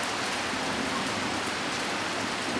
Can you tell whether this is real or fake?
real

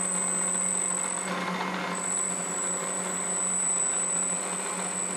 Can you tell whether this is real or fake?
real